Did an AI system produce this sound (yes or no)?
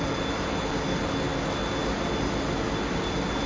no